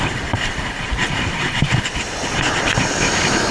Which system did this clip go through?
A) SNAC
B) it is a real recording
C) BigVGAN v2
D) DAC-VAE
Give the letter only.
C